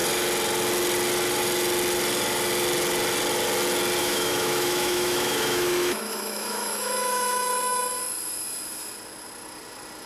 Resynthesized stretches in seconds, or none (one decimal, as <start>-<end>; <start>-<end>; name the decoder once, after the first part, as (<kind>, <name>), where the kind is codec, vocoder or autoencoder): 4.0-8.0 (autoencoder, DAC-VAE)